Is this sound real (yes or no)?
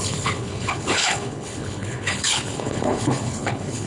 no